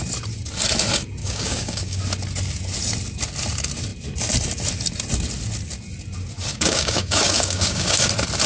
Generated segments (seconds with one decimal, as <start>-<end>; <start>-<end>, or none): 1.2-2.0; 6.5-8.1